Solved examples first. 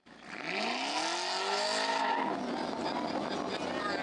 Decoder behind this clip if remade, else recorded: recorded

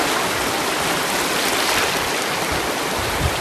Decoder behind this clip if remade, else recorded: recorded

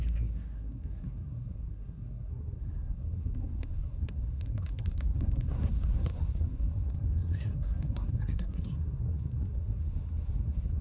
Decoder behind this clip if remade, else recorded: remade, codec, SNAC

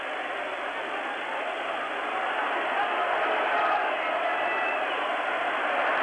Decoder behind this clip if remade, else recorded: recorded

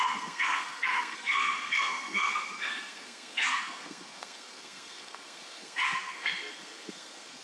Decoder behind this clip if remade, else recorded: remade, codec, SNAC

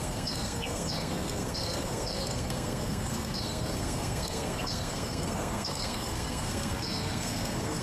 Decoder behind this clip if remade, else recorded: remade, codec, SNAC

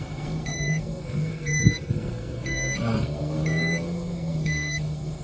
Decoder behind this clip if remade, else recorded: remade, codec, SNAC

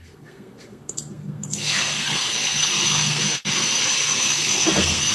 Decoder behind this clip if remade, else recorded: remade, codec, SNAC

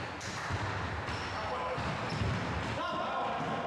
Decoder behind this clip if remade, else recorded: recorded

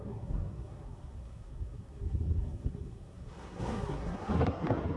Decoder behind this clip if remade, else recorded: remade, codec, SNAC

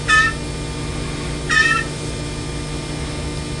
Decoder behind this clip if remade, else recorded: recorded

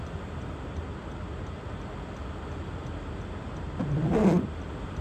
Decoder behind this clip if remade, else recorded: recorded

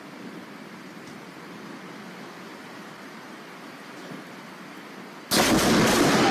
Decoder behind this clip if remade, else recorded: recorded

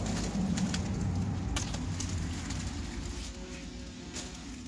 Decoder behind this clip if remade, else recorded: recorded